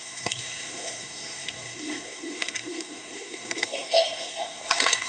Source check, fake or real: fake